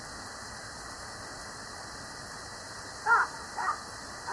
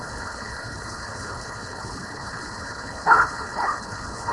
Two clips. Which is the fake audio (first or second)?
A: second